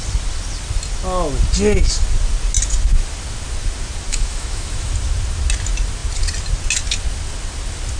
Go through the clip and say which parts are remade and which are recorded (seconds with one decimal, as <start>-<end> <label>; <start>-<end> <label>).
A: 0.0-4.1 recorded; 4.1-4.9 remade; 4.9-8.0 recorded